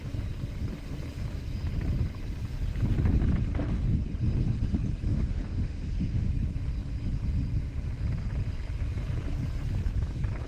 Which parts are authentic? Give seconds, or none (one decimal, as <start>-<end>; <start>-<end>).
0.0-5.1; 6.3-10.5